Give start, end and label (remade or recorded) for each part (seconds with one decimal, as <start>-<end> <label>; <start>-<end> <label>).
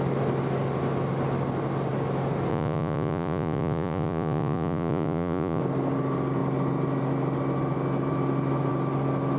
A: 0.0-2.5 recorded; 2.5-5.6 remade; 5.6-9.4 recorded